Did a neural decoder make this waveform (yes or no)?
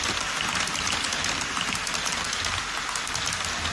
no